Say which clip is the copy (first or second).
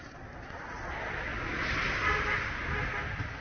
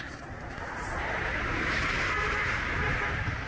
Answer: second